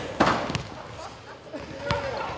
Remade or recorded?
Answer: recorded